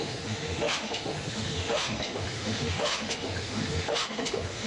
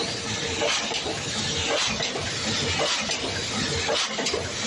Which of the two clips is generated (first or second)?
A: first